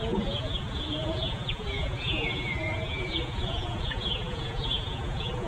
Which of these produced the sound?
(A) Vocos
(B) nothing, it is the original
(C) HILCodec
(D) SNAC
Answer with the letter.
A